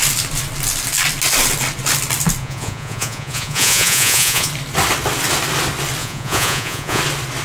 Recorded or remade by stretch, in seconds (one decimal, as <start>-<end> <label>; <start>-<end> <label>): 0.0-2.4 recorded; 2.4-4.5 remade; 4.5-6.0 recorded; 6.0-7.0 remade; 7.0-7.4 recorded